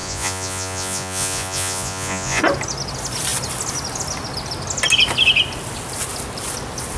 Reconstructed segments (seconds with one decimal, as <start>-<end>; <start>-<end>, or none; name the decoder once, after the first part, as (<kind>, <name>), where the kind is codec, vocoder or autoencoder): 0.0-2.4 (vocoder, Vocos)